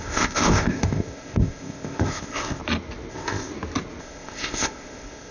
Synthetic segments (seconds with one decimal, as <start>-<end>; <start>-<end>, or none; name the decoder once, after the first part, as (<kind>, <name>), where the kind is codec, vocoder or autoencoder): 0.0-2.6 (codec, ZipCodec); 3.1-3.5; 4.0-5.3